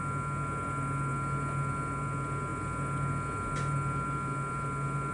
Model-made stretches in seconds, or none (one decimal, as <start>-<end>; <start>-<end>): none